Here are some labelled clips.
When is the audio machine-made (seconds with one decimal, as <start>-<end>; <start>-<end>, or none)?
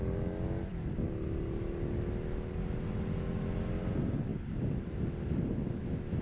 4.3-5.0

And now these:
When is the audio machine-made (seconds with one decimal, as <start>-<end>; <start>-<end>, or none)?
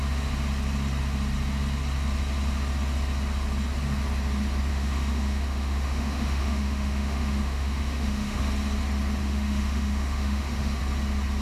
4.7-8.4; 9.2-10.8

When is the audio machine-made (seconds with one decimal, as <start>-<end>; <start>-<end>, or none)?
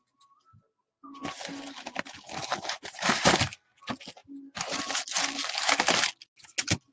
2.4-3.3; 4.2-4.8